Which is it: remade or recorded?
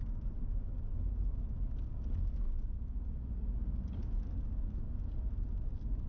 recorded